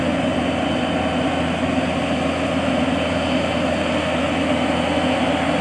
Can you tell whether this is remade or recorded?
recorded